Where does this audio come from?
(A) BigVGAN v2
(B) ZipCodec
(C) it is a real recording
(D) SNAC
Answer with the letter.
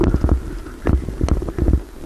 C